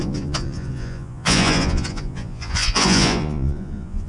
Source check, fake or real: fake